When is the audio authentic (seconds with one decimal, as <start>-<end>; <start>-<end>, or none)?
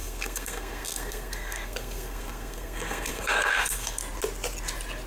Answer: 4.0-5.1